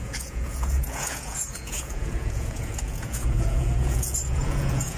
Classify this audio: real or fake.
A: fake